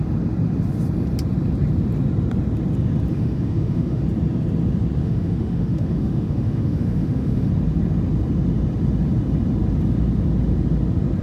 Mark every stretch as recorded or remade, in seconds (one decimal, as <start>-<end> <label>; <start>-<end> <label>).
0.0-3.1 recorded; 3.1-4.0 remade; 4.0-5.0 recorded; 5.0-7.5 remade; 7.5-11.2 recorded